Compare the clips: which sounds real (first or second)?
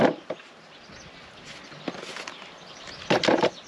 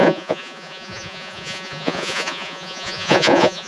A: first